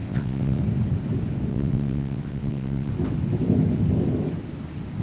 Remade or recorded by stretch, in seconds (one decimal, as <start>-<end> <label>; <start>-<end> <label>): 0.0-0.6 remade; 0.6-1.5 recorded; 1.5-2.9 remade; 2.9-5.0 recorded

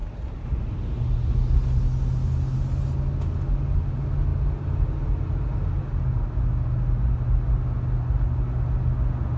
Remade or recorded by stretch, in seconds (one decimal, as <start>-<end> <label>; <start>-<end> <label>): 0.0-9.4 recorded

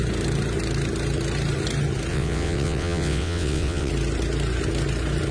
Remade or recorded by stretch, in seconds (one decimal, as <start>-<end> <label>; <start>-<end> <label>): 0.0-2.1 recorded; 2.1-3.9 remade; 3.9-5.3 recorded